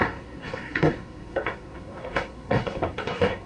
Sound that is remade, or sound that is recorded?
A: remade